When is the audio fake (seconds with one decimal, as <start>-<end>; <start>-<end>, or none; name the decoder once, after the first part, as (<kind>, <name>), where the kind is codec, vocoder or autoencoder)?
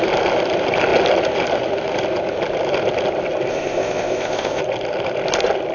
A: 3.5-4.6 (codec, ZipCodec)